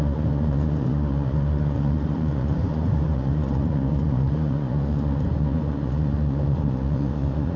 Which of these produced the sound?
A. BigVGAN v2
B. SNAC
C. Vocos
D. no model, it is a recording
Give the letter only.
C